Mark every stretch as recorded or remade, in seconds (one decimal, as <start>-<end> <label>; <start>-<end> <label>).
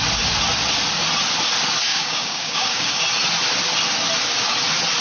0.0-1.9 recorded; 1.9-3.0 remade; 3.0-5.0 recorded